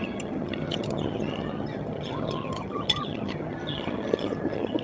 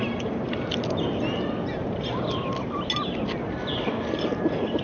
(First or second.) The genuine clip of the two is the second